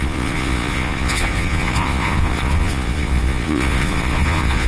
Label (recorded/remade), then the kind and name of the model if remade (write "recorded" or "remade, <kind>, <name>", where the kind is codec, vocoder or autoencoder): remade, vocoder, Vocos